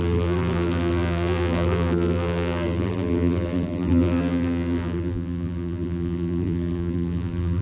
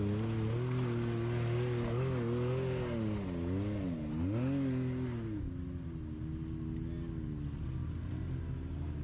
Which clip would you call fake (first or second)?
first